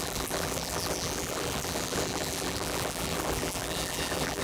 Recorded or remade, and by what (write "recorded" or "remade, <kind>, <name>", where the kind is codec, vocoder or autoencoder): remade, vocoder, BigVGAN v2